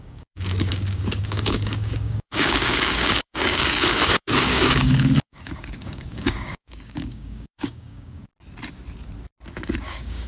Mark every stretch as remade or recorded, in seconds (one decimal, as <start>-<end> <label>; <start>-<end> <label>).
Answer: 0.0-8.3 remade; 8.3-9.8 recorded; 9.8-10.3 remade